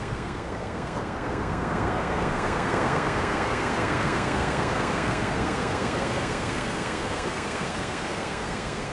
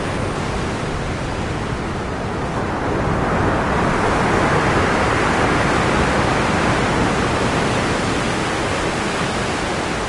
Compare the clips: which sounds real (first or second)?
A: second